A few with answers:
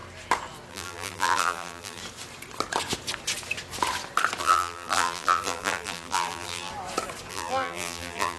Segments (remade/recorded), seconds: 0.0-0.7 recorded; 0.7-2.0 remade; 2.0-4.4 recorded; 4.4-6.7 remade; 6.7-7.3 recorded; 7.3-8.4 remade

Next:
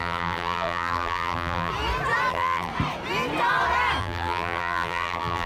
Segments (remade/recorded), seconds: 0.0-1.7 remade; 1.7-2.3 recorded; 2.3-2.7 remade; 2.7-4.0 recorded; 4.0-5.5 remade